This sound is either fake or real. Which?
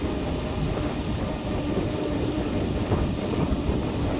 fake